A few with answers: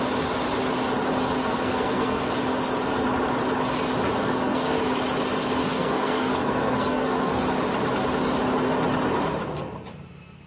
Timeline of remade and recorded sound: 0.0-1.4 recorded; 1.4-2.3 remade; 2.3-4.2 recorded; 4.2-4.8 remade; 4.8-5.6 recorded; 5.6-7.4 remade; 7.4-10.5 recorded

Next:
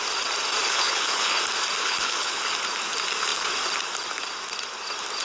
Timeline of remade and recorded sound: 0.0-0.6 recorded; 0.6-1.4 remade; 1.4-1.8 recorded; 1.8-2.5 remade; 2.5-5.2 recorded

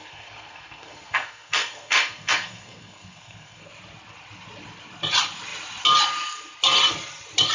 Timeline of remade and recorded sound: 0.0-3.7 remade; 3.7-7.5 recorded

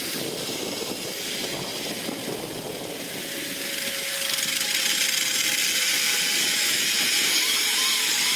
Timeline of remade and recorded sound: 0.0-4.1 recorded; 4.1-4.7 remade; 4.7-7.3 recorded; 7.3-8.4 remade

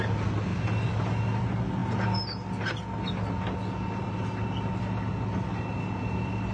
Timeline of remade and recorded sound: 0.0-6.5 recorded

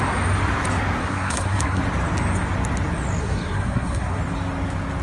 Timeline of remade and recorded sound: 0.0-1.0 recorded; 1.0-1.8 remade; 1.8-3.2 recorded; 3.2-4.2 remade; 4.2-5.0 recorded